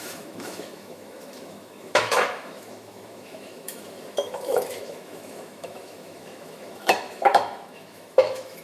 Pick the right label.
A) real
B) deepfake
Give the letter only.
B